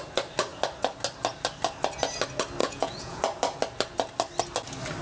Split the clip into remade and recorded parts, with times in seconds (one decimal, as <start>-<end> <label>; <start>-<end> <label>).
0.0-2.6 recorded; 2.6-3.2 remade; 3.2-5.0 recorded

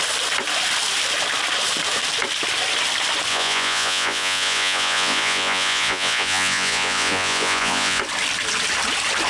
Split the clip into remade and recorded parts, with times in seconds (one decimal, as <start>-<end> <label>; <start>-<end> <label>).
0.0-3.3 recorded; 3.3-8.0 remade; 8.0-9.3 recorded

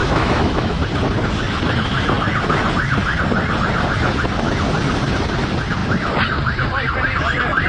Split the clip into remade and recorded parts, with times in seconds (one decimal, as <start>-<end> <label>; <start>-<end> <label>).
0.0-0.8 remade; 0.8-7.7 recorded